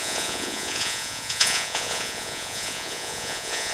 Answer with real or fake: fake